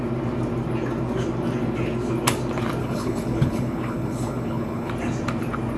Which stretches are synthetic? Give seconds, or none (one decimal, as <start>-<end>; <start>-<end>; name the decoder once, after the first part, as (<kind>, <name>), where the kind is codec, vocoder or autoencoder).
2.8-4.9 (codec, HILCodec)